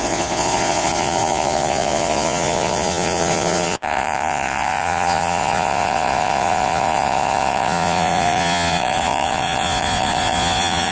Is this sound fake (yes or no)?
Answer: yes